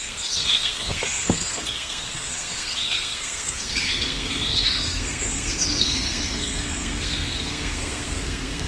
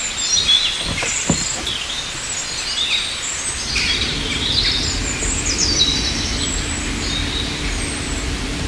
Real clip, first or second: second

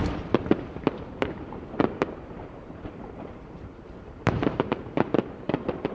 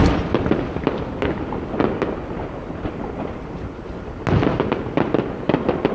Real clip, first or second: second